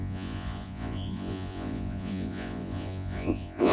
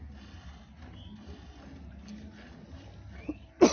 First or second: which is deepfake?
first